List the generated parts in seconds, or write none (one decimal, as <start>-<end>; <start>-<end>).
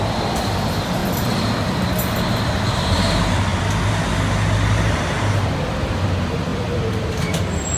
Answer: 0.0-1.0; 2.3-3.5; 5.3-7.8